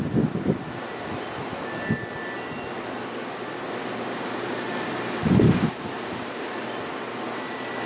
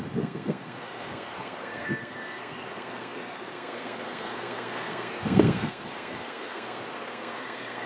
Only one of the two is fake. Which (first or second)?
second